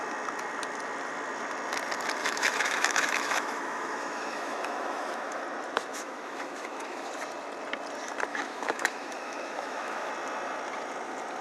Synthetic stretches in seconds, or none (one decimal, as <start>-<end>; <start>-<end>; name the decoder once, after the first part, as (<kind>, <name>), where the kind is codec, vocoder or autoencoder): 2.2-5.4 (autoencoder, DAC-VAE); 5.9-7.1; 8.3-10.1

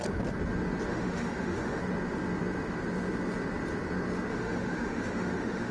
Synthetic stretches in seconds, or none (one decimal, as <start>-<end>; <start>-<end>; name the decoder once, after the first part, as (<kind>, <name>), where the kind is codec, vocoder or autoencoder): 0.9-1.8 (autoencoder, DAC-VAE); 4.3-5.7

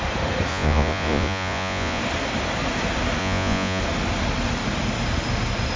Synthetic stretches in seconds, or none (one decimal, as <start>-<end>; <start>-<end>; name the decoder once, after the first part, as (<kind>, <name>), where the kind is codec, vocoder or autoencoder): 0.5-2.0 (vocoder, Vocos); 3.2-3.8

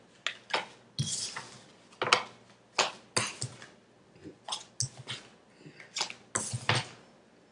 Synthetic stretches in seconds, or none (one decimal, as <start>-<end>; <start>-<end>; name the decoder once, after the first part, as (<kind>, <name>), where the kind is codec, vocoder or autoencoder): 4.2-4.7 (vocoder, Vocos)

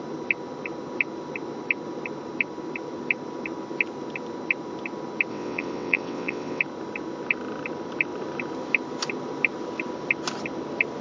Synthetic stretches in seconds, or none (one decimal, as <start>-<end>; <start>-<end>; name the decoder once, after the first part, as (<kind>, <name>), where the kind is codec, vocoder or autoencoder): 5.3-6.6 (vocoder, WaveNeXt)

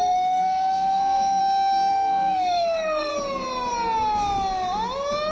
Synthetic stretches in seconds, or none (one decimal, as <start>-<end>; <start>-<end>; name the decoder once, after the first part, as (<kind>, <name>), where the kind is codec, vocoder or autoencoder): 0.0-1.4 (codec, SNAC); 1.9-3.1

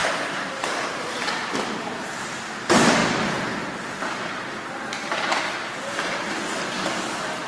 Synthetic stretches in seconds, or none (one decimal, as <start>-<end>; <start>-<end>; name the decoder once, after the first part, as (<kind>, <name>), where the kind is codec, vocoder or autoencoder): 0.0-1.5 (vocoder, BigVGAN v2)